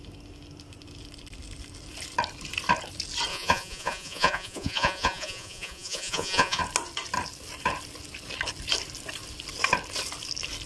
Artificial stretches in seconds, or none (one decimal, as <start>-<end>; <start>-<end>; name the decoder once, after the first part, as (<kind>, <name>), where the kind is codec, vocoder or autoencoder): 3.3-6.6 (vocoder, Vocos)